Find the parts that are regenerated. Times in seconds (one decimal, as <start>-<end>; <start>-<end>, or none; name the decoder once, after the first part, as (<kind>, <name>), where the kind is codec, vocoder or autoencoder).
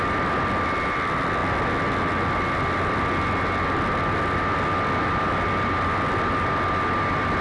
none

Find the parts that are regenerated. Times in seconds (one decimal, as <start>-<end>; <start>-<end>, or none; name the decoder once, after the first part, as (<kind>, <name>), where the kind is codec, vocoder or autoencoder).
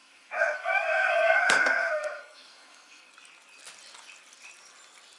0.0-3.1 (codec, SNAC)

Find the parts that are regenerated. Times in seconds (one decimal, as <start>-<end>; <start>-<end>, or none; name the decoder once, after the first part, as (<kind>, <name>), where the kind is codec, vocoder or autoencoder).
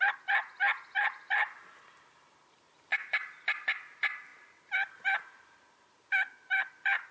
none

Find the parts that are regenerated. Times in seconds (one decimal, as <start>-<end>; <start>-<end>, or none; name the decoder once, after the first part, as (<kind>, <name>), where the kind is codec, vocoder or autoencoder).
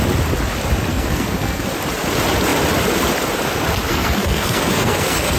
0.9-1.7 (codec, SNAC); 3.9-5.4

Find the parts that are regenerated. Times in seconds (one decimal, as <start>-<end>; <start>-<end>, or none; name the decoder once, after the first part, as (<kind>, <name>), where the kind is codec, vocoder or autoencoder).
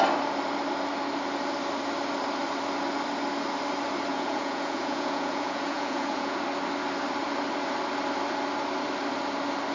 4.1-6.4 (vocoder, Vocos)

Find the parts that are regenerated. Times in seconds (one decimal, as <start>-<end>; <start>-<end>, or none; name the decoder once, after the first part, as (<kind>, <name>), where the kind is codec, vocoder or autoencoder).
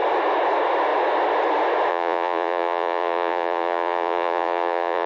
1.9-5.1 (vocoder, Vocos)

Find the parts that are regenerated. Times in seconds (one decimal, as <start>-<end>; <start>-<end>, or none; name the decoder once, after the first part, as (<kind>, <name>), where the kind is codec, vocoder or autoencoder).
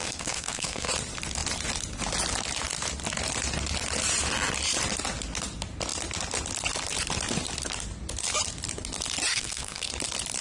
0.0-0.9 (codec, SNAC); 9.3-9.9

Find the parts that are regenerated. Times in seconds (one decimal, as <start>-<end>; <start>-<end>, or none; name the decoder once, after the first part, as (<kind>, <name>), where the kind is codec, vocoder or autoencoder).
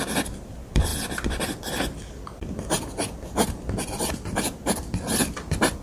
0.0-0.9 (vocoder, BigVGAN v2); 4.4-5.8